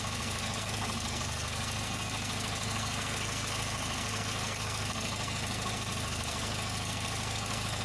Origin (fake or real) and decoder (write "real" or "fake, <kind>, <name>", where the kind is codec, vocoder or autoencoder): fake, codec, SNAC